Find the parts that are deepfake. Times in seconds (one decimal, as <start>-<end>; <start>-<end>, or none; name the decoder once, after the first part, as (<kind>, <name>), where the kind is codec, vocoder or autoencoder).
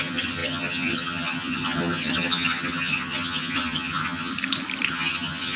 0.0-4.3 (vocoder, HiFi-GAN); 4.9-5.6